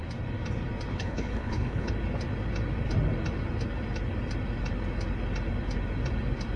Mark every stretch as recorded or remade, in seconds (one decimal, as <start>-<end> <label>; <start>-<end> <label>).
0.0-0.9 recorded; 0.9-1.9 remade; 1.9-6.6 recorded

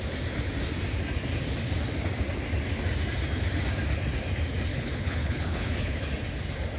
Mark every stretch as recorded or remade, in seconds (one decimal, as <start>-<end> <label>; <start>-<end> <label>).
0.0-4.7 recorded; 4.7-6.1 remade; 6.1-6.8 recorded

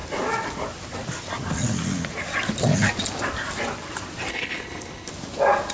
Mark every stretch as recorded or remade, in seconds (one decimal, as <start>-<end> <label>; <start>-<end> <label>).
0.0-4.3 recorded; 4.3-5.1 remade; 5.1-5.7 recorded

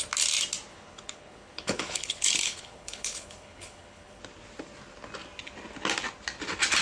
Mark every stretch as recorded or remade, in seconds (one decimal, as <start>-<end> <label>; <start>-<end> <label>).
0.0-0.7 recorded; 0.7-4.2 remade; 4.2-6.8 recorded

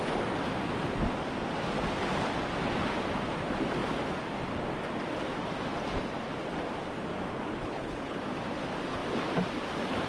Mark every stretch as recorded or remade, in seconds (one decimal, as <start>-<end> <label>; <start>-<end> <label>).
0.0-7.6 recorded; 7.6-8.2 remade; 8.2-10.1 recorded

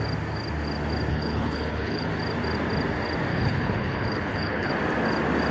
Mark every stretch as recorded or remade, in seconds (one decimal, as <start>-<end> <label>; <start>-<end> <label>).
0.0-1.1 recorded; 1.1-2.1 remade; 2.1-3.3 recorded; 3.3-4.7 remade; 4.7-5.5 recorded

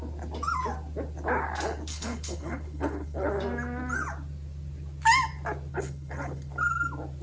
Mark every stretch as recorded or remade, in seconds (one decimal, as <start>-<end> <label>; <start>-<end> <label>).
0.0-1.9 recorded; 1.9-3.3 remade; 3.3-5.7 recorded; 5.7-6.5 remade; 6.5-7.2 recorded

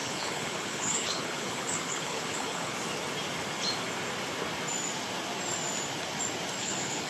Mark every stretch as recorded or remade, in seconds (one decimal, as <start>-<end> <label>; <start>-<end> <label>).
0.0-2.7 remade; 2.7-6.6 recorded; 6.6-7.1 remade